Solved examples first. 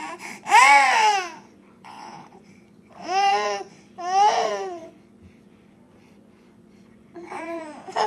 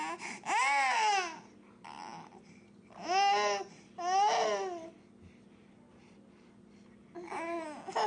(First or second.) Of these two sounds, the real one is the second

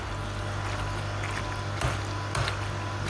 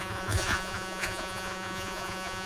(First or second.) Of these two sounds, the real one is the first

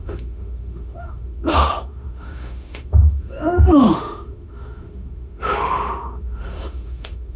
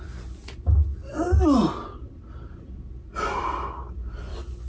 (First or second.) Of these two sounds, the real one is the second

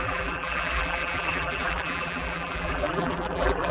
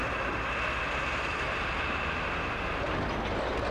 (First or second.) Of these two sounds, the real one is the second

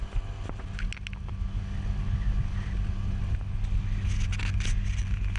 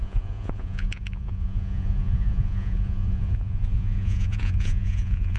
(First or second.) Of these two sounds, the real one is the first